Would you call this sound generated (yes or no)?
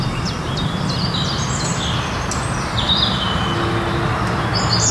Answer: no